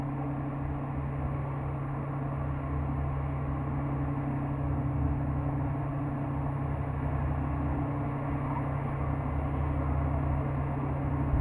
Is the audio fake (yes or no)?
no